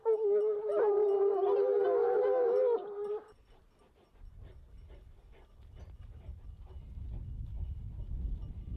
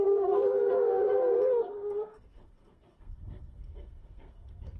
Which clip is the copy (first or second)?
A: second